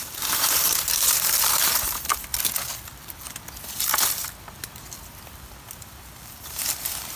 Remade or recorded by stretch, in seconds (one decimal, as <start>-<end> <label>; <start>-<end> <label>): 0.0-2.3 remade; 2.3-6.3 recorded; 6.3-7.2 remade